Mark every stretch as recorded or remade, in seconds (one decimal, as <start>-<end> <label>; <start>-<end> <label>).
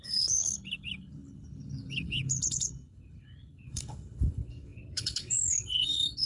0.0-6.3 remade